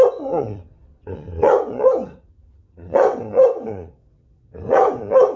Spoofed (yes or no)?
yes